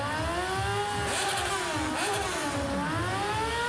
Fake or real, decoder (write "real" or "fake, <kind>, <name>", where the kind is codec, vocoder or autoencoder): real